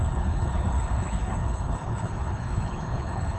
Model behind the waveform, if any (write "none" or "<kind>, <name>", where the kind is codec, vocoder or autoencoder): codec, HILCodec